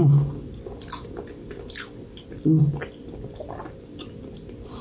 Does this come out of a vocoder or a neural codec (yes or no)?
no